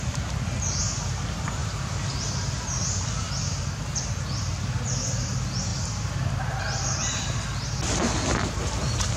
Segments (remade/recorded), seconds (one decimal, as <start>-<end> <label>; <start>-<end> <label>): 0.0-9.2 recorded